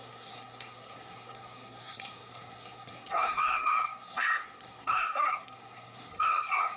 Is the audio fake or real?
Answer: fake